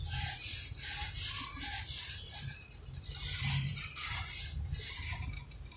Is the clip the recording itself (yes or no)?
no